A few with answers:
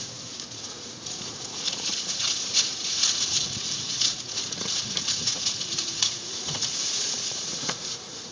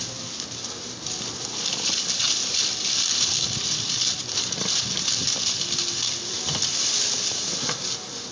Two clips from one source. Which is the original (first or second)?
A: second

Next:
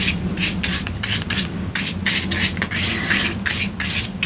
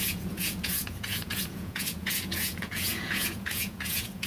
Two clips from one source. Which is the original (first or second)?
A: first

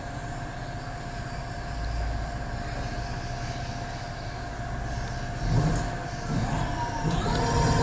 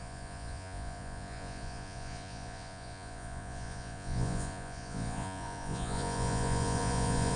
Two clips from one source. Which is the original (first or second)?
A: first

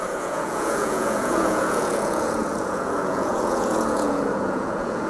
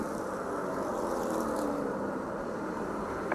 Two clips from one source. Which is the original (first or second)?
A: second